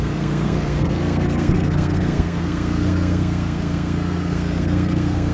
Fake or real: fake